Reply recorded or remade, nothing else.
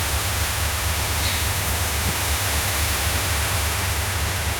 remade